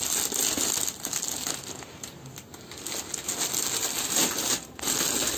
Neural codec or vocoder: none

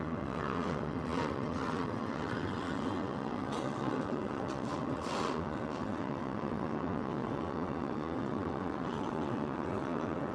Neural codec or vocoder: vocoder, WaveNeXt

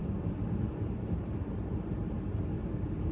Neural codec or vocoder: none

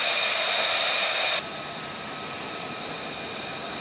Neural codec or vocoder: none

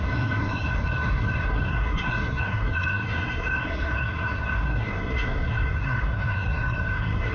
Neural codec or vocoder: codec, SNAC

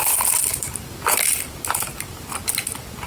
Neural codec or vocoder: none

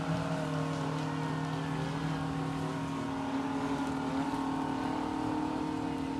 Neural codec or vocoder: none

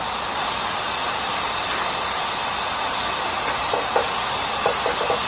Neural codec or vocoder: none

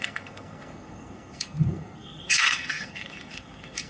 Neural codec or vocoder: codec, SNAC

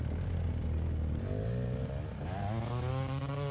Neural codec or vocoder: none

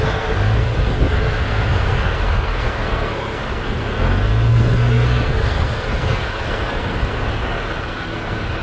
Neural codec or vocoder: codec, SNAC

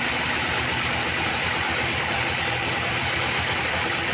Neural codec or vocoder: none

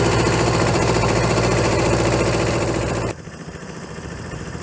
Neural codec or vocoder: vocoder, BigVGAN v2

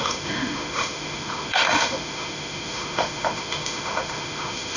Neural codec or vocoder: autoencoder, DAC-VAE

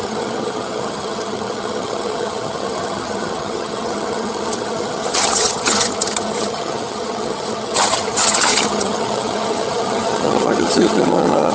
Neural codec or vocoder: vocoder, HiFi-GAN